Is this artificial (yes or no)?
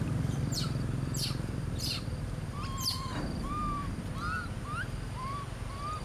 yes